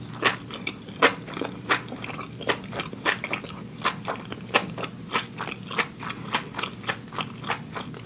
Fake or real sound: real